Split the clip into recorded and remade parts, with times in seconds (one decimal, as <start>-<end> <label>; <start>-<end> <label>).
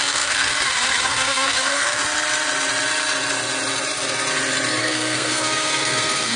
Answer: 0.0-0.5 remade; 0.5-1.0 recorded; 1.0-2.0 remade; 2.0-4.8 recorded; 4.8-6.4 remade